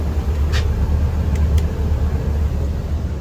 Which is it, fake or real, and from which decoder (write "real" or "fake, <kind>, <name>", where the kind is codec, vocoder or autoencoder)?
real